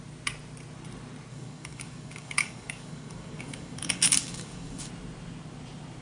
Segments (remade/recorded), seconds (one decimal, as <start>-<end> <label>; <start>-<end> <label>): 0.0-1.3 recorded; 1.3-4.9 remade; 4.9-6.0 recorded